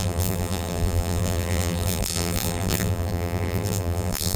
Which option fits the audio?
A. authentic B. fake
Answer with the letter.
B